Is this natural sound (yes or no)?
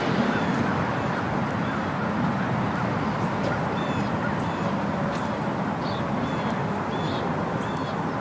yes